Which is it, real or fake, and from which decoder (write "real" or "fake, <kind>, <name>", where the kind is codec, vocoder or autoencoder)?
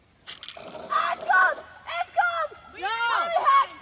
real